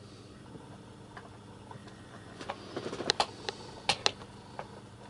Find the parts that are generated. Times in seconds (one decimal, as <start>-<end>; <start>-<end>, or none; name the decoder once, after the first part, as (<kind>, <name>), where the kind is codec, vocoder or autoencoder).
1.8-2.5 (vocoder, Vocos)